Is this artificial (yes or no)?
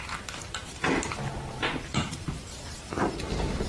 yes